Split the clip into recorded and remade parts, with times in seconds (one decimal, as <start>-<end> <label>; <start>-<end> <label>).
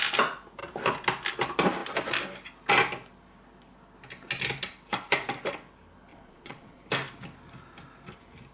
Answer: 0.0-6.1 recorded; 6.1-6.8 remade; 6.8-8.5 recorded